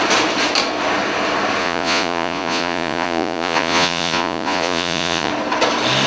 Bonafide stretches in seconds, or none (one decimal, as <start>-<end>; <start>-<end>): 0.0-1.6; 5.3-6.1